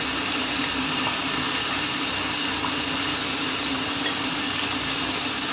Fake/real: real